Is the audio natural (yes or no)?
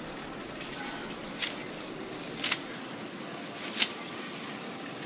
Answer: yes